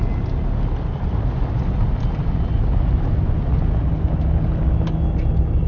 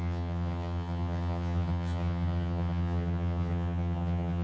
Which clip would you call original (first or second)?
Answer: first